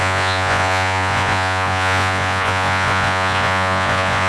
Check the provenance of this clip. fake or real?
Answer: fake